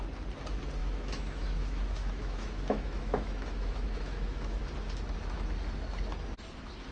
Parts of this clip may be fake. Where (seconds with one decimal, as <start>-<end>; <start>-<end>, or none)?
0.8-4.6